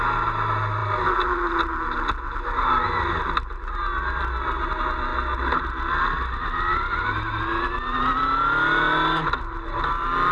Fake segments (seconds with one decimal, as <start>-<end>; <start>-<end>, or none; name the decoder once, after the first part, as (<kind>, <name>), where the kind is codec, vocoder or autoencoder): none